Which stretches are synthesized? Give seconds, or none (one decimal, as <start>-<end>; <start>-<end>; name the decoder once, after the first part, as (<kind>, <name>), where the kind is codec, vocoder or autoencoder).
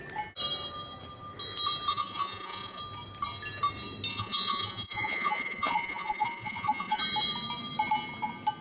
1.9-2.8 (vocoder, Vocos); 4.1-7.0